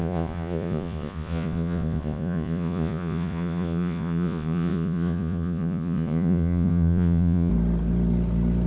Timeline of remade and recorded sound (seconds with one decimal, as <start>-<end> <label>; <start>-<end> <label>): 0.0-7.5 remade; 7.5-8.7 recorded